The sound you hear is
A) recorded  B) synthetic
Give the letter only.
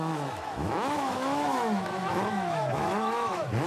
B